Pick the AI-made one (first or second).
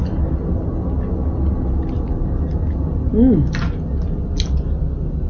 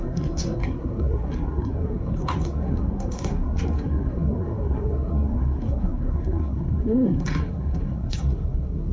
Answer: second